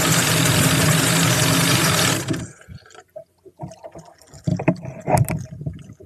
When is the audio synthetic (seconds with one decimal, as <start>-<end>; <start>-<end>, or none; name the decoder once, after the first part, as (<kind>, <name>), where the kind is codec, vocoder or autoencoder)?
none